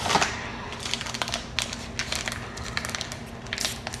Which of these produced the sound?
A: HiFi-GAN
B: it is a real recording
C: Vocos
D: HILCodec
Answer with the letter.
B